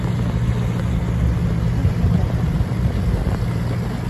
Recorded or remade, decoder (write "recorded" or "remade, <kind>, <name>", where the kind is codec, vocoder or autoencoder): recorded